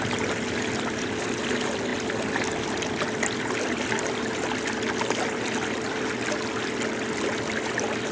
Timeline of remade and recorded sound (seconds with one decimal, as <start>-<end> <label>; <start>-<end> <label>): 0.0-8.1 recorded